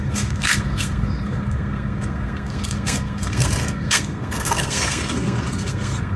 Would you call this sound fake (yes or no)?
yes